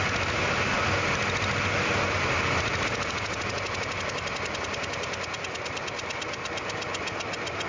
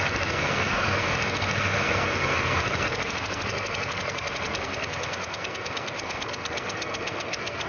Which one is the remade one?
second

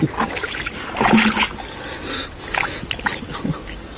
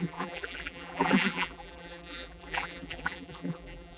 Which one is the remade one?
second